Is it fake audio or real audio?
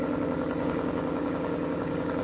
fake